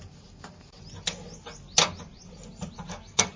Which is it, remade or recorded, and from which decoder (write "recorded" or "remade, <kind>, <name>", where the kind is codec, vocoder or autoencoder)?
recorded